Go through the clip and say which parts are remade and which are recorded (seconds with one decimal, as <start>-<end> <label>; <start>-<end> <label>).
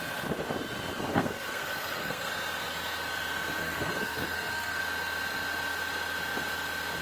0.0-1.1 recorded; 1.1-2.3 remade; 2.3-3.6 recorded; 3.6-4.8 remade; 4.8-7.0 recorded